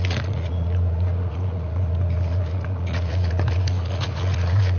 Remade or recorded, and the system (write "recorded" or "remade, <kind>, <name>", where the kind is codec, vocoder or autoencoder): remade, vocoder, Vocos